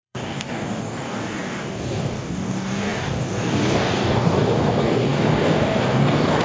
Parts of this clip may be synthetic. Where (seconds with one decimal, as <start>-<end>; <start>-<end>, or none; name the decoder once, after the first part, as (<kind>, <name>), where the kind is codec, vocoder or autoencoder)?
0.0-6.4 (codec, DAC)